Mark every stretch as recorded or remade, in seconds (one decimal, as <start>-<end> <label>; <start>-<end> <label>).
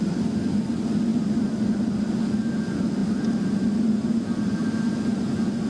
0.0-1.1 recorded; 1.1-1.9 remade; 1.9-3.0 recorded; 3.0-5.0 remade; 5.0-5.7 recorded